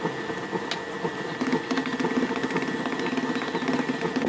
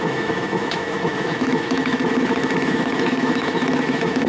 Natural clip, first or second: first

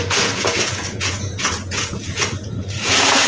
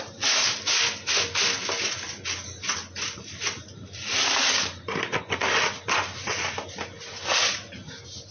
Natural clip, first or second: second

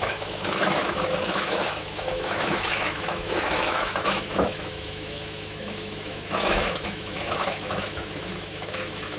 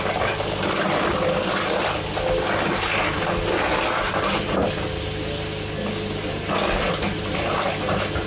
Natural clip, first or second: second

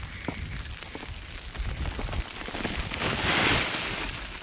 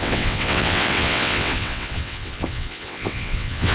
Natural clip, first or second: first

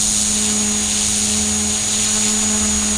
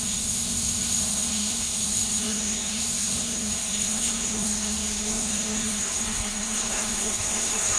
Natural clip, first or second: first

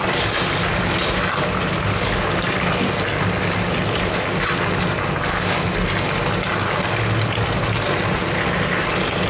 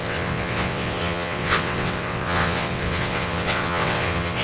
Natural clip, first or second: first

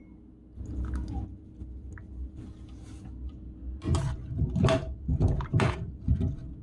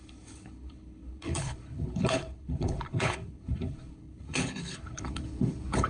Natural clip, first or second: first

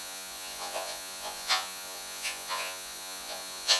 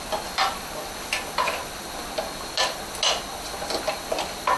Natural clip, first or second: second